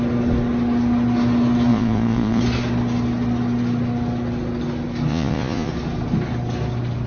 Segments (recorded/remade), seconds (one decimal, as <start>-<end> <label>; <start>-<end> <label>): 0.0-1.7 recorded; 1.7-2.4 remade; 2.4-5.1 recorded; 5.1-5.7 remade; 5.7-7.1 recorded